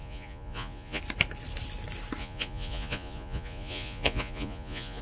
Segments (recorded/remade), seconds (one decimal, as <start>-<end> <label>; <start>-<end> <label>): 0.0-1.0 remade; 1.0-2.2 recorded; 2.2-5.0 remade